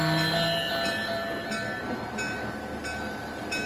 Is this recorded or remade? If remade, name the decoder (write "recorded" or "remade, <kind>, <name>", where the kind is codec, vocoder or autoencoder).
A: recorded